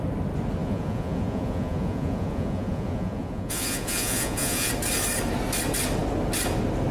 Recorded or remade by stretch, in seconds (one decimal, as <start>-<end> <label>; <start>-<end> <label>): 0.0-0.6 recorded; 0.6-4.7 remade; 4.7-6.9 recorded